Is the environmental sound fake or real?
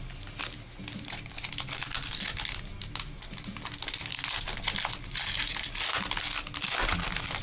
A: real